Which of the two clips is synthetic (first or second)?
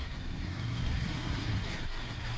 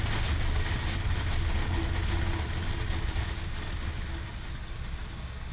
first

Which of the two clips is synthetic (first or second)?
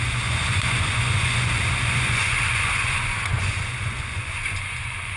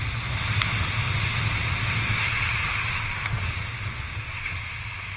first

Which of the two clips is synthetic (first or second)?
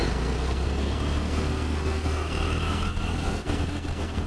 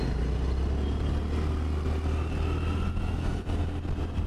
first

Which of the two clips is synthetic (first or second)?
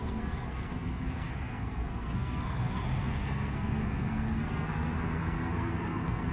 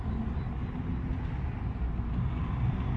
first